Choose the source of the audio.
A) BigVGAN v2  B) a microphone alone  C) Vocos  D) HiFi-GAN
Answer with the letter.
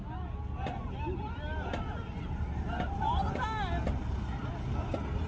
B